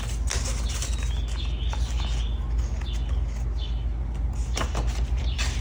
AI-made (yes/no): no